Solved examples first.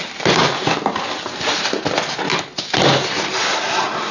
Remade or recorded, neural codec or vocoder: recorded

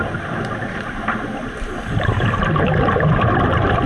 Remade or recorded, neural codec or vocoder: remade, vocoder, BigVGAN v2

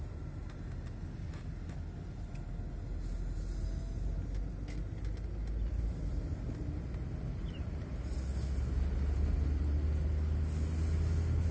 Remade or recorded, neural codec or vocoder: recorded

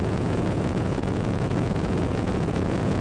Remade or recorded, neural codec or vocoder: remade, vocoder, Vocos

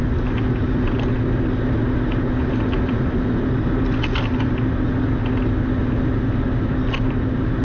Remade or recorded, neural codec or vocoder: recorded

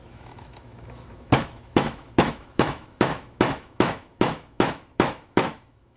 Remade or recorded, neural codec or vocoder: remade, autoencoder, DAC-VAE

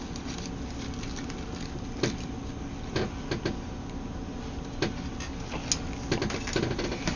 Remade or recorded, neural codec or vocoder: recorded